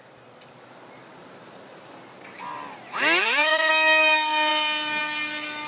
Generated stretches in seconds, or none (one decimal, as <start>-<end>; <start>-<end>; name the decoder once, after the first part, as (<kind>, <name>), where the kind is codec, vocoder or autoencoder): 3.2-3.7 (vocoder, HiFi-GAN)